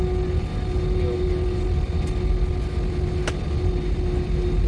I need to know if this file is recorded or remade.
recorded